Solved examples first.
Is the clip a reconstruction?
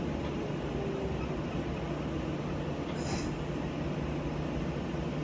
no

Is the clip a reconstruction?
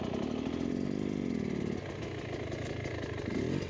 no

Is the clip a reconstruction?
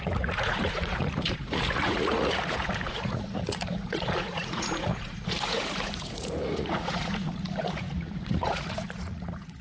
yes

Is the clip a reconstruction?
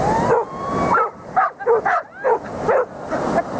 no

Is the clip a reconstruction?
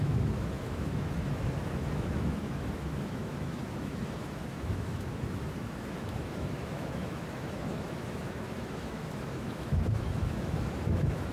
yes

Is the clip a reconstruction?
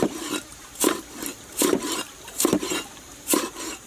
yes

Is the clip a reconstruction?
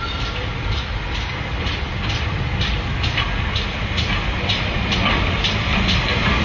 no